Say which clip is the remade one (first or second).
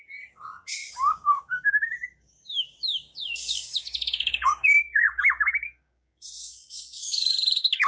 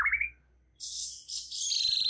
first